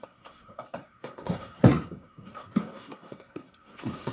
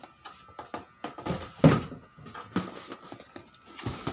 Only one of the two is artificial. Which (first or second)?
first